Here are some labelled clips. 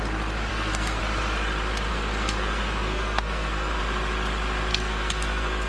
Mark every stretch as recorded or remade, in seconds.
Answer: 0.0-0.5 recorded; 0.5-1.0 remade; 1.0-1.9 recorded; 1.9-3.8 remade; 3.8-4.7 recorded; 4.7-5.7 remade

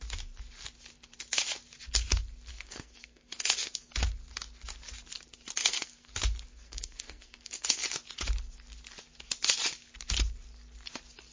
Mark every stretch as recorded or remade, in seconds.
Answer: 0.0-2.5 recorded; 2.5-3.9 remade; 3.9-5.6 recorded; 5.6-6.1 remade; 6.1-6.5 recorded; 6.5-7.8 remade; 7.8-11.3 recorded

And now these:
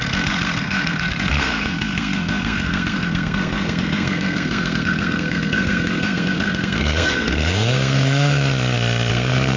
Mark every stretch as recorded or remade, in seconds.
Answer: 0.0-8.4 remade; 8.4-9.1 recorded; 9.1-9.6 remade

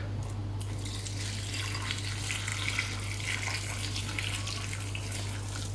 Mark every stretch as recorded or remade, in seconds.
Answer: 0.0-5.7 recorded

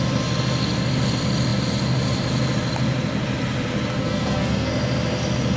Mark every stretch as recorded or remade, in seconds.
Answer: 0.0-4.0 recorded; 4.0-4.7 remade; 4.7-5.6 recorded